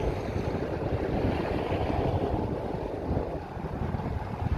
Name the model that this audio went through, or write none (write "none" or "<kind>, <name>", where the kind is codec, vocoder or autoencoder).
none